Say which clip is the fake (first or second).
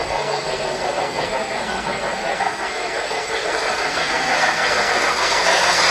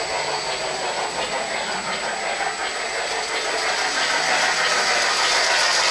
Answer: first